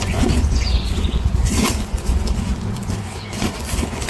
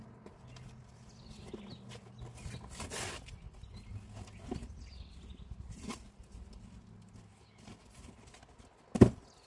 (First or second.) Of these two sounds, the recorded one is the second